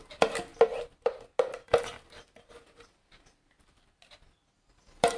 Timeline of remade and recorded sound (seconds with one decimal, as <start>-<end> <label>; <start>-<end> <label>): 0.0-5.2 recorded